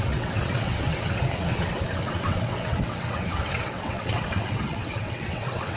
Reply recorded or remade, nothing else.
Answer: remade